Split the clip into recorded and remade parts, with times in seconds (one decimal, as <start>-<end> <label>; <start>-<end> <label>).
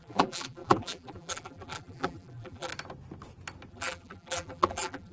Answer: 0.0-2.7 remade; 2.7-3.7 recorded; 3.7-5.1 remade